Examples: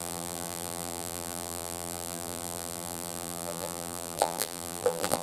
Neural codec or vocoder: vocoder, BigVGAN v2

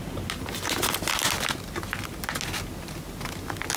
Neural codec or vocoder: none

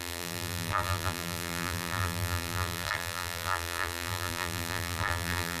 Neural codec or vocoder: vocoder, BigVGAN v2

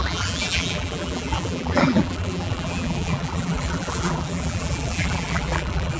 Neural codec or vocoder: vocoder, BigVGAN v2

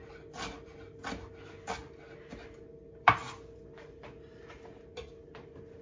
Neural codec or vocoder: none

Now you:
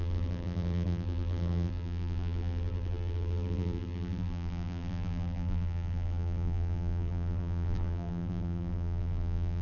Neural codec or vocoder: vocoder, BigVGAN v2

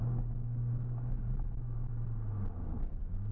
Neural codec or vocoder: none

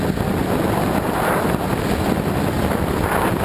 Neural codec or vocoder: none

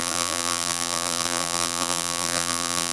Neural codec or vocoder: vocoder, BigVGAN v2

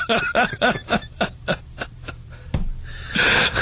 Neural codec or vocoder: none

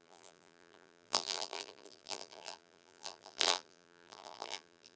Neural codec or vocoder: vocoder, BigVGAN v2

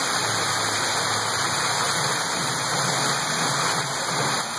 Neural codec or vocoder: none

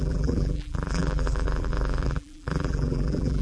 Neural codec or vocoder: vocoder, BigVGAN v2